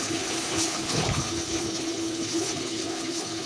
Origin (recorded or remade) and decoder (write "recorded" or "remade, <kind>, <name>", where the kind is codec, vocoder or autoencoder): remade, codec, HILCodec